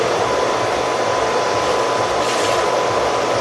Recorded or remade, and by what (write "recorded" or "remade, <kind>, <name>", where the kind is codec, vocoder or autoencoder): recorded